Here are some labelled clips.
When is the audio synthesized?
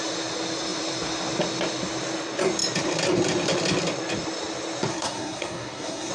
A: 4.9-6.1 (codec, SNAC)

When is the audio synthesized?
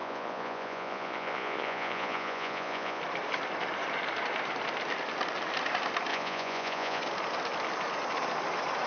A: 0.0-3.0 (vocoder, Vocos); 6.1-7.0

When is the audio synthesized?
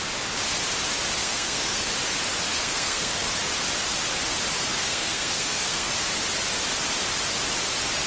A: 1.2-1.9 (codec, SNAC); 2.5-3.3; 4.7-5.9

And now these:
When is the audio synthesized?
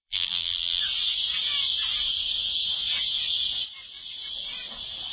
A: 0.0-0.8 (vocoder, BigVGAN v2)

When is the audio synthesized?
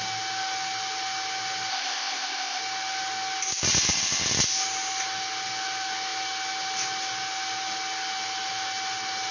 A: 1.7-2.6 (codec, ZipCodec)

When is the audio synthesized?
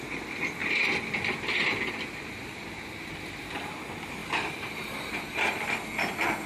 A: 0.6-3.7 (vocoder, BigVGAN v2); 4.2-5.7